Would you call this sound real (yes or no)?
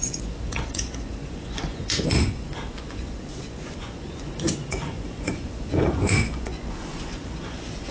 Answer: no